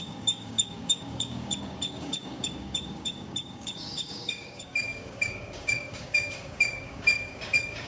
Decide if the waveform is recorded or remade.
remade